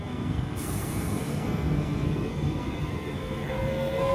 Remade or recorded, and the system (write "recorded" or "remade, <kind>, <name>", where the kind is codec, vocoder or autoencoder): remade, codec, SNAC